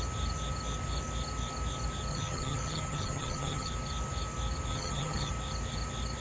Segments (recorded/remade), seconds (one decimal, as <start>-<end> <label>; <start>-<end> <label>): 0.0-2.1 recorded; 2.1-3.7 remade; 3.7-4.7 recorded; 4.7-5.3 remade; 5.3-6.2 recorded